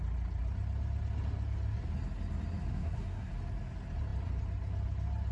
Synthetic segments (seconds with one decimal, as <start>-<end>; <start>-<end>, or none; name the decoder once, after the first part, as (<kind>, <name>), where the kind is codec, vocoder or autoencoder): 2.7-3.3 (codec, SNAC)